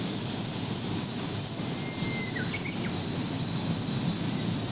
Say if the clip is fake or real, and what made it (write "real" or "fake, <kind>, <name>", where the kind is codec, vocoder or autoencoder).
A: real